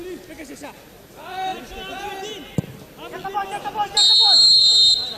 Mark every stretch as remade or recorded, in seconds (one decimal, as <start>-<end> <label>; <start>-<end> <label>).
0.0-5.2 recorded